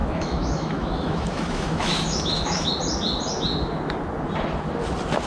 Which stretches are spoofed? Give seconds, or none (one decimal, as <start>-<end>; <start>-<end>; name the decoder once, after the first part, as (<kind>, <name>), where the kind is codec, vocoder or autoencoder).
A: 0.0-2.7 (autoencoder, DAC-VAE)